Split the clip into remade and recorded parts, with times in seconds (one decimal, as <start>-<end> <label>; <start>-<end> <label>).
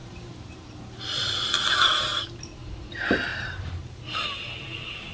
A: 0.0-1.0 remade; 1.0-2.1 recorded; 2.1-2.6 remade; 2.6-3.3 recorded; 3.3-3.9 remade; 3.9-5.1 recorded